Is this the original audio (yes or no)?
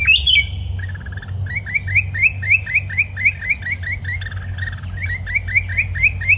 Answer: yes